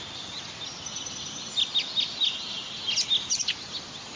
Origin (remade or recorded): recorded